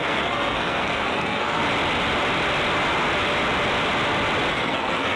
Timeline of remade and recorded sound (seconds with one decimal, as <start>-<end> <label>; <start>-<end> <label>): 0.0-1.6 remade; 1.6-4.5 recorded; 4.5-5.2 remade